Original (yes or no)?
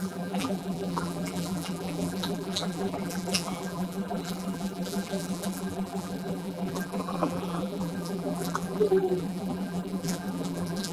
no